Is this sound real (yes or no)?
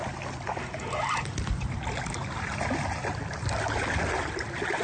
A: yes